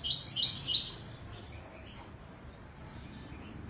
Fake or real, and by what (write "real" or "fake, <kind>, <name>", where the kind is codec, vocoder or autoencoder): fake, vocoder, BigVGAN v2